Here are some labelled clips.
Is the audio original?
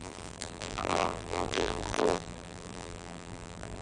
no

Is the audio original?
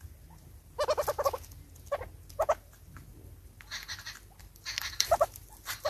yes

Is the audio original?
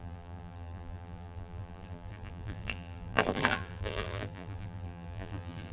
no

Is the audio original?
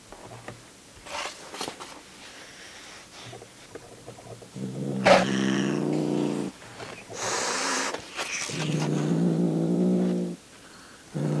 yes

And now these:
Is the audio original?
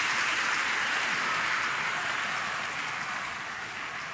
yes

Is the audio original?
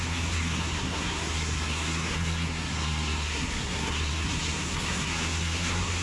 no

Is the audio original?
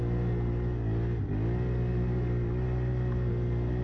yes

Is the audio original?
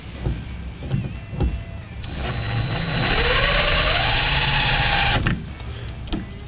yes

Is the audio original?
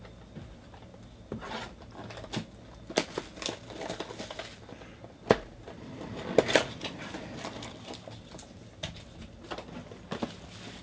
yes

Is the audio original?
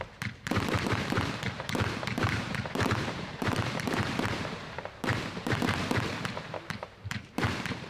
no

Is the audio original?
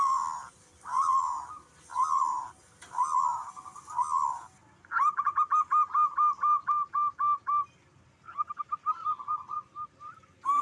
yes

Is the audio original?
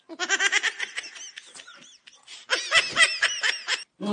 yes